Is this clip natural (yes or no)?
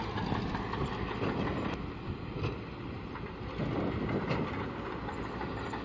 yes